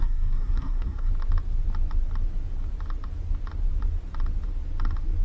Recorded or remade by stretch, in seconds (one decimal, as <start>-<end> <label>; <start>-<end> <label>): 0.0-1.1 remade; 1.1-5.2 recorded